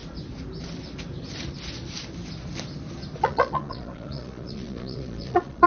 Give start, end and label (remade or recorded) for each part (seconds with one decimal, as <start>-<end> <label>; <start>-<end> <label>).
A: 0.0-3.2 recorded; 3.2-5.7 remade

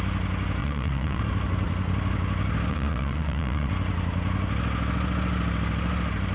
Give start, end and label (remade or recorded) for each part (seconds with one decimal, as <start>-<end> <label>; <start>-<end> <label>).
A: 0.0-0.6 recorded; 0.6-1.2 remade; 1.2-2.7 recorded; 2.7-3.7 remade; 3.7-6.3 recorded